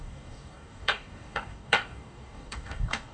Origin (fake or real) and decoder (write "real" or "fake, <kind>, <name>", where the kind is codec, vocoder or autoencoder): fake, codec, DAC